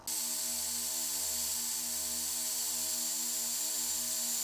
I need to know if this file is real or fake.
real